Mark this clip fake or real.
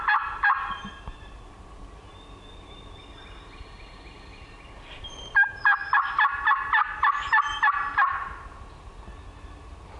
real